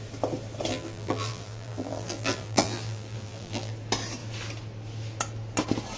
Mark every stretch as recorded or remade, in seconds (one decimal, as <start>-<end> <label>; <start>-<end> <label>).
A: 0.0-0.7 recorded; 0.7-3.7 remade; 3.7-6.0 recorded